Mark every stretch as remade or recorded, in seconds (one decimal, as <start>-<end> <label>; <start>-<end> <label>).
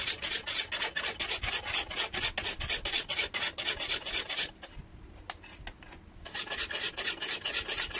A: 0.0-8.0 recorded